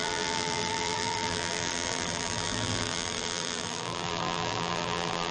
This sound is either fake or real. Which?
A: fake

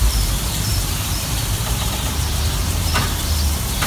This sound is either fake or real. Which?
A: fake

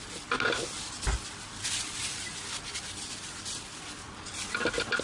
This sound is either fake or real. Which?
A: real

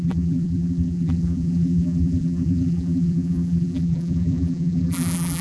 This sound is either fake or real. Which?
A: fake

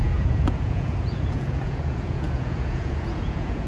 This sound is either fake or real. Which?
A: fake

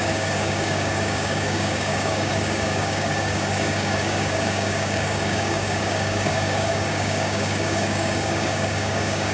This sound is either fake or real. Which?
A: fake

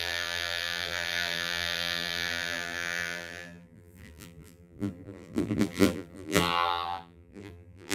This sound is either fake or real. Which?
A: fake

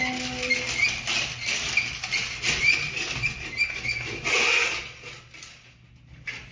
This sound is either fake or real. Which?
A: real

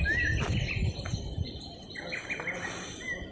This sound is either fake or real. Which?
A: real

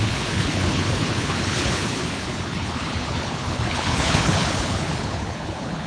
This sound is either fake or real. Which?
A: fake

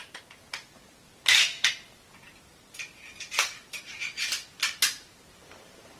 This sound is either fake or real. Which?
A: fake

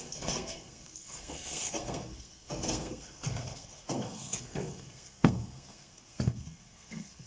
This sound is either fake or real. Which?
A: fake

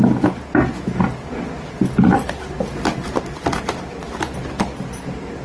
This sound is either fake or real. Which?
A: real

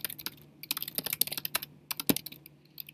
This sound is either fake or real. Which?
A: real